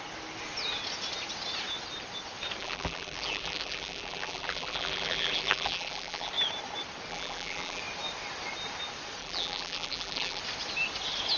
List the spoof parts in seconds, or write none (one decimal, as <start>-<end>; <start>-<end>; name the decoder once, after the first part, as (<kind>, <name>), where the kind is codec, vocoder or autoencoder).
2.6-6.3 (vocoder, BigVGAN v2); 7.1-7.8; 9.2-10.4